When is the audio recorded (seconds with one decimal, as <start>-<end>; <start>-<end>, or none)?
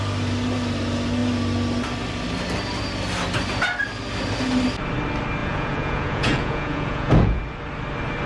0.0-5.4; 7.4-8.3